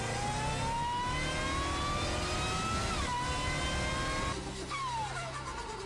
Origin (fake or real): real